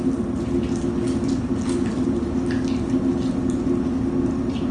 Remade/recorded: recorded